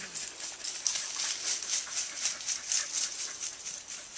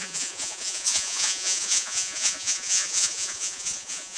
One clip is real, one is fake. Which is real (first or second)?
first